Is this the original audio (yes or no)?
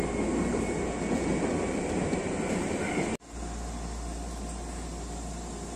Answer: yes